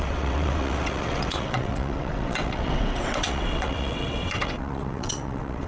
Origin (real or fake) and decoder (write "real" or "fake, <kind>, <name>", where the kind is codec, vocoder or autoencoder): fake, vocoder, WaveNeXt